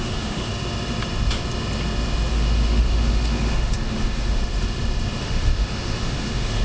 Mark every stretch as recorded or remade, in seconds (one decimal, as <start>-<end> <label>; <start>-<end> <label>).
0.0-0.5 remade; 0.5-2.3 recorded; 2.3-4.4 remade; 4.4-5.2 recorded; 5.2-6.6 remade